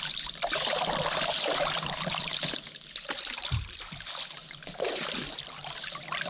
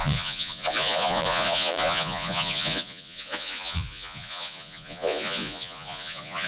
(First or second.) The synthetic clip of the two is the second